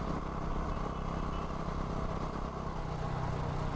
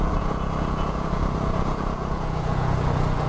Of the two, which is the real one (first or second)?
first